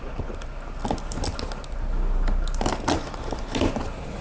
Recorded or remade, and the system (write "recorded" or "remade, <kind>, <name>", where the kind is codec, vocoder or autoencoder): recorded